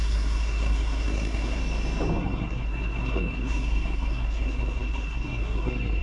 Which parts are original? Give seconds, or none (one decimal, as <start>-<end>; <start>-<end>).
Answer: 1.6-2.2